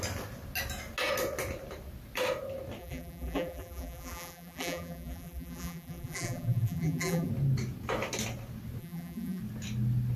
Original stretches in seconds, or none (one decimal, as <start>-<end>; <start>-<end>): 0.0-2.8; 7.3-8.8; 9.4-10.2